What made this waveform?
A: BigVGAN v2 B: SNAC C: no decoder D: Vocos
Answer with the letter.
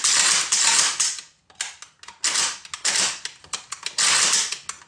C